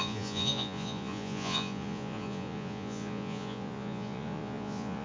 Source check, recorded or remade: remade